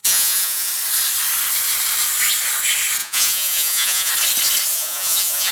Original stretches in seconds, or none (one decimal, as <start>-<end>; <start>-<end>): 0.7-3.0; 4.1-4.7